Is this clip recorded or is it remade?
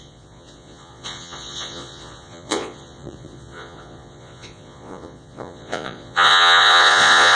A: remade